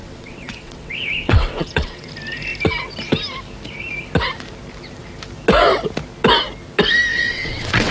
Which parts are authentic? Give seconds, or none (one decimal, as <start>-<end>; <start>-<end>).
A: 2.1-7.1